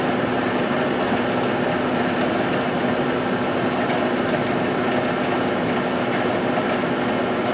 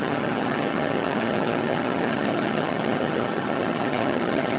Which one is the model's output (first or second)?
second